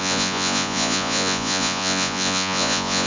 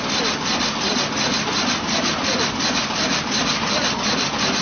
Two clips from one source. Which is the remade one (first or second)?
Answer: first